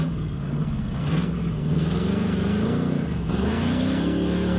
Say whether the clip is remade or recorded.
remade